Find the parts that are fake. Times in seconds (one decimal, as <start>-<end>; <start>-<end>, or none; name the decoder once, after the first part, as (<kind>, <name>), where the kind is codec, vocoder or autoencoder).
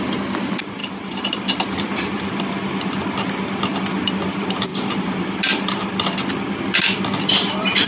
0.8-2.4 (vocoder, BigVGAN v2); 4.7-6.6